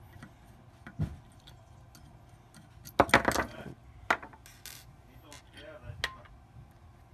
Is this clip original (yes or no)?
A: yes